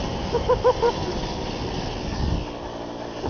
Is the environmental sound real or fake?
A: real